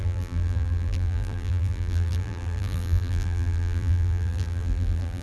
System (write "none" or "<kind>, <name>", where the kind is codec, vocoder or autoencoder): vocoder, BigVGAN v2